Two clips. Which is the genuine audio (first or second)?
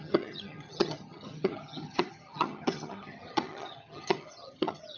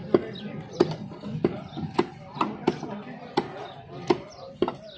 second